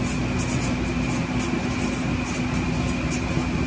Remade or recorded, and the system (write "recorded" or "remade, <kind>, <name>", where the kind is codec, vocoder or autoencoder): recorded